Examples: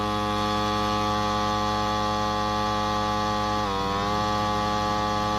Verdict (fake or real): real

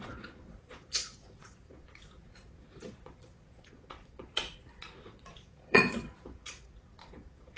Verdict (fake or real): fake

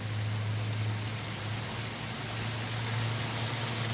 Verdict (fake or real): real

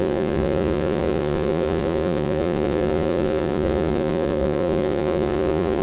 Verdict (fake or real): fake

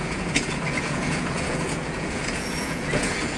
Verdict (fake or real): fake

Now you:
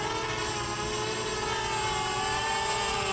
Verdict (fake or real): real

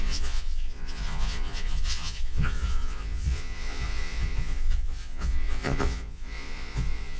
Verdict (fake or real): fake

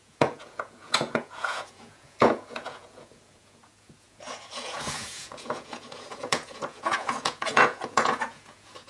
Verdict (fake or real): fake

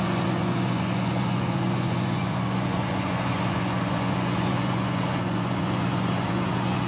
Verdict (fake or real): fake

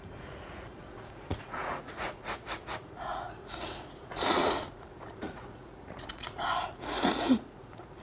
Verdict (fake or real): fake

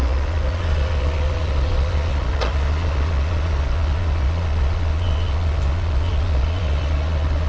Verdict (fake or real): fake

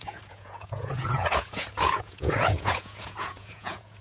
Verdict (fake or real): fake